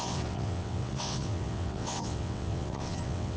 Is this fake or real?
fake